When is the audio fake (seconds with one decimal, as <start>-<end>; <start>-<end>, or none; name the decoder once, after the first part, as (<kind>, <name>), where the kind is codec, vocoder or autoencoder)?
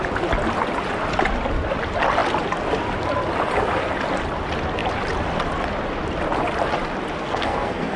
7.2-8.0 (codec, SNAC)